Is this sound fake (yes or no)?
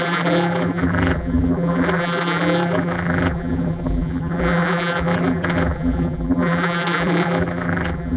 yes